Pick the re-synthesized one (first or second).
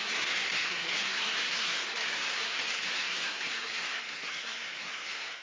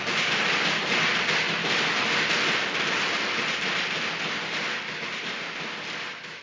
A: first